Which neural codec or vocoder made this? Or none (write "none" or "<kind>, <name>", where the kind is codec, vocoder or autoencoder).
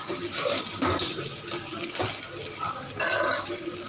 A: none